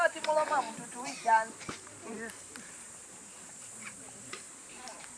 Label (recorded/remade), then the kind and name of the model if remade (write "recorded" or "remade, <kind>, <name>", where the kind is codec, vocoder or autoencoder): remade, vocoder, BigVGAN v2